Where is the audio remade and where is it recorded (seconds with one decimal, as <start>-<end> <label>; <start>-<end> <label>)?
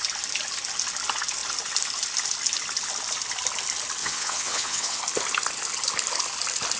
0.0-4.0 recorded; 4.0-5.0 remade; 5.0-6.8 recorded